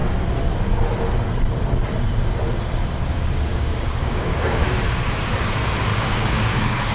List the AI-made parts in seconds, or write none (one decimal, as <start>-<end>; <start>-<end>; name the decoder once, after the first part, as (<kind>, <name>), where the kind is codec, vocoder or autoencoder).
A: 3.5-4.7 (codec, DAC); 5.9-6.9